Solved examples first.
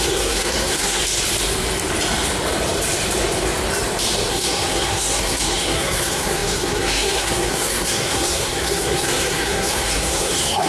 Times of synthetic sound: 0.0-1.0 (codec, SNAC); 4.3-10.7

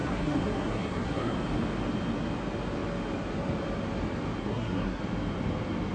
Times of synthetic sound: 0.0-1.4 (codec, SNAC); 4.4-5.0

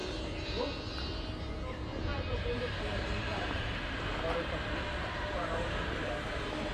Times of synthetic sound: 0.0-1.5 (vocoder, BigVGAN v2); 2.1-6.1

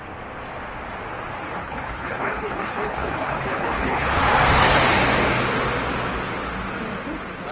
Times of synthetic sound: 1.6-4.1 (codec, HILCodec)

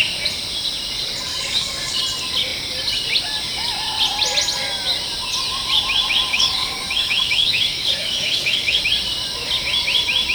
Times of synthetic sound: 1.3-2.0 (codec, DAC); 6.3-8.8

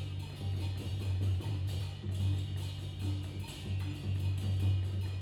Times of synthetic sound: 0.9-1.8 (vocoder, BigVGAN v2)

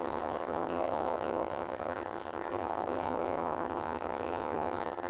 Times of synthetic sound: 0.0-5.1 (vocoder, HiFi-GAN)

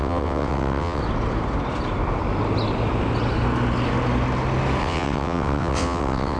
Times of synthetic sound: 0.0-1.0 (vocoder, WaveNeXt); 4.8-6.4